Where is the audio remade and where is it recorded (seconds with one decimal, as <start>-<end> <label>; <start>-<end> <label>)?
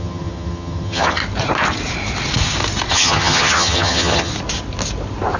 0.0-1.2 remade; 1.2-2.9 recorded; 2.9-4.3 remade; 4.3-5.4 recorded